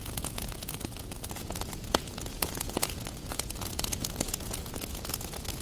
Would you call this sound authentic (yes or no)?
no